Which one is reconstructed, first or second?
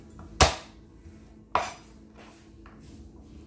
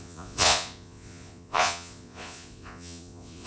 second